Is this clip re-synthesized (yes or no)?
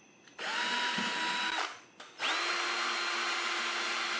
no